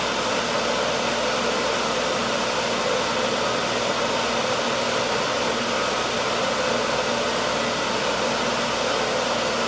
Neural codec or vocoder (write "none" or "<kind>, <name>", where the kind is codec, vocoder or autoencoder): none